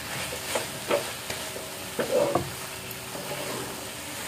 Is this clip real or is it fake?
real